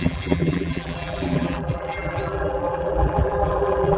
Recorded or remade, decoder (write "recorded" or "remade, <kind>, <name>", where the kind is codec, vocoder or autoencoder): remade, vocoder, BigVGAN v2